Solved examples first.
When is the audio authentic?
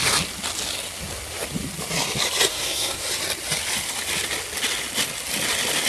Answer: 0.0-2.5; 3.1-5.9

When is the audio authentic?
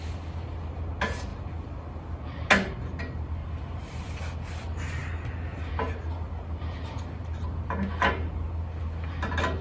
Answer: 0.0-3.4; 4.2-9.6